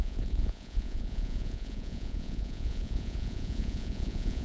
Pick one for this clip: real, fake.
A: fake